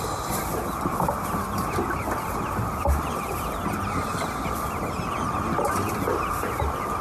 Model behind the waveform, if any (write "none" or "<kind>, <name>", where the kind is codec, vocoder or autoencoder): none